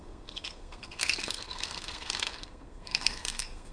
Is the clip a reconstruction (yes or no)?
yes